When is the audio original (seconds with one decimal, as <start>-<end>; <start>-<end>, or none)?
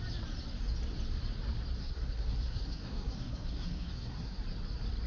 0.0-1.8; 4.4-5.1